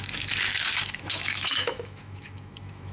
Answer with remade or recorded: remade